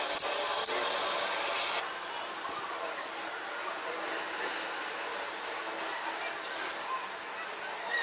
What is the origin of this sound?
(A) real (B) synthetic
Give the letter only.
A